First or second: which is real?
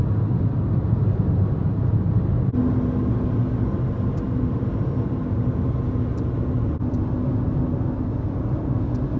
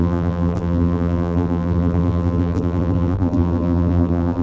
first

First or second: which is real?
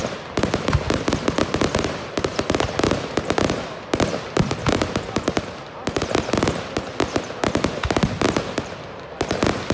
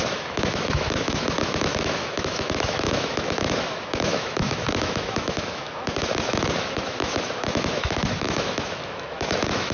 first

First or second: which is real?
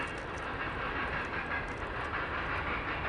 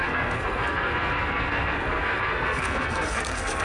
first